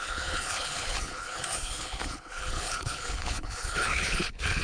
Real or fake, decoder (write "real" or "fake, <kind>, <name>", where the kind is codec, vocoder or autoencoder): fake, codec, HILCodec